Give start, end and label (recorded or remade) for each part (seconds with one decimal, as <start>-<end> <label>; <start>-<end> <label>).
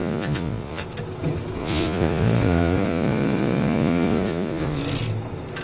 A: 0.0-0.8 remade; 0.8-1.6 recorded; 1.6-4.8 remade; 4.8-5.6 recorded